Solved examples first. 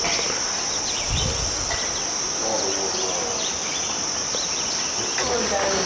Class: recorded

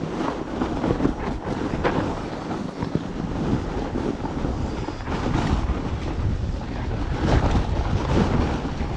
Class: recorded